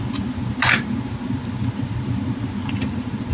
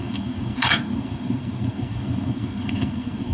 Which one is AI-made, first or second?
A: second